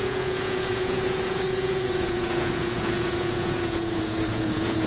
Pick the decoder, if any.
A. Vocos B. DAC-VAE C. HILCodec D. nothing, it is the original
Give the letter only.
A